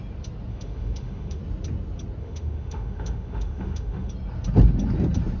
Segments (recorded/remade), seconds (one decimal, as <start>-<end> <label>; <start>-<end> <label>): 0.0-0.5 recorded; 0.5-1.4 remade; 1.4-2.2 recorded; 2.2-4.1 remade; 4.1-5.4 recorded